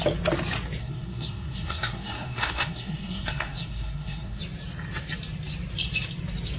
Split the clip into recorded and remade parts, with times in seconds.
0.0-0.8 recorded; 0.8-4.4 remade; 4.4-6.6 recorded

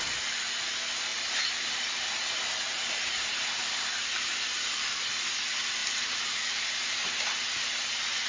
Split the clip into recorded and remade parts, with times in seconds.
0.0-1.1 recorded; 1.1-3.8 remade; 3.8-5.8 recorded; 5.8-8.3 remade

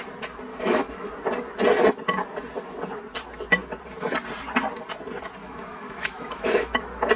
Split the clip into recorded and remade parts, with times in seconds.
0.0-0.5 recorded; 0.5-1.1 remade; 1.1-5.4 recorded; 5.4-6.8 remade; 6.8-7.2 recorded

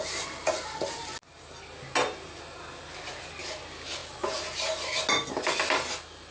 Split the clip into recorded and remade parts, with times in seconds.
0.0-6.3 recorded

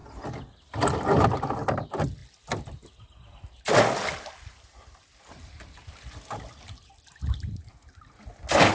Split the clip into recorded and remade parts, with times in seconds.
0.0-8.7 recorded

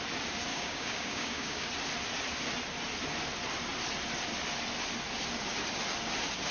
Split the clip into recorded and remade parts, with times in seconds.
0.0-0.5 recorded; 0.5-1.7 remade; 1.7-6.5 recorded

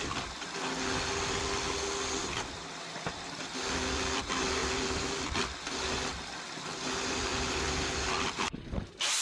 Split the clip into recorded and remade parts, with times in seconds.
0.0-9.2 recorded